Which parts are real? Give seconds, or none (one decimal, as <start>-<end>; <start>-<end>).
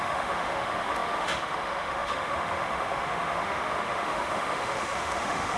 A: none